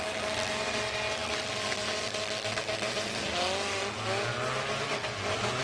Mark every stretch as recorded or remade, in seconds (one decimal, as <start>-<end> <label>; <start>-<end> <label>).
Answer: 0.0-5.6 recorded